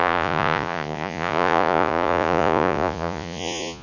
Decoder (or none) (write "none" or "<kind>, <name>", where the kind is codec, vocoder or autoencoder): vocoder, Vocos